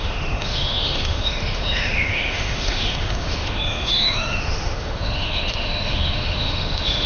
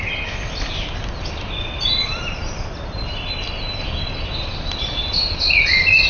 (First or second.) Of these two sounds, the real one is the second